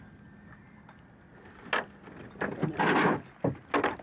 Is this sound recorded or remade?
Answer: recorded